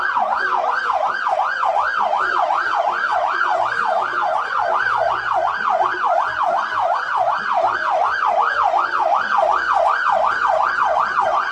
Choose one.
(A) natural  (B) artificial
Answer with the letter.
B